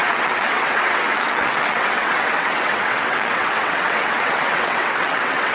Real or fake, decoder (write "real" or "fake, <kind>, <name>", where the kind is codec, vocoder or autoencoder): fake, vocoder, WaveNeXt